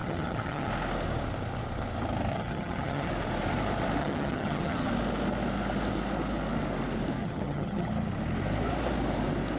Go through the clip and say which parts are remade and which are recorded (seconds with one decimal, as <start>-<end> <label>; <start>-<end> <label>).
0.0-0.7 remade; 0.7-2.3 recorded; 2.3-3.1 remade; 3.1-4.0 recorded; 4.0-4.9 remade; 4.9-7.2 recorded; 7.2-7.9 remade; 7.9-9.6 recorded